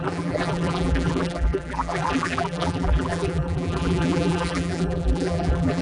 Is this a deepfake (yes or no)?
yes